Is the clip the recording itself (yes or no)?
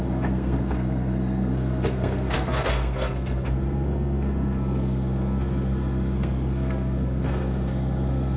no